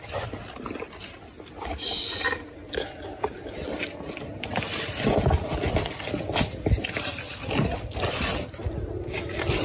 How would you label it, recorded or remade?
recorded